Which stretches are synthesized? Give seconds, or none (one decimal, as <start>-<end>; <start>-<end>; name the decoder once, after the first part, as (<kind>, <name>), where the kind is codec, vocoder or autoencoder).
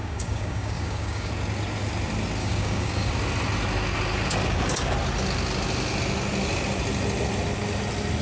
0.0-1.3 (codec, DAC); 2.4-3.1